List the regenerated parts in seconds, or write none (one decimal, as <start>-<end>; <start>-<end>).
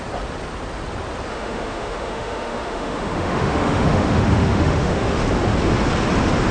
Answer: 1.3-5.2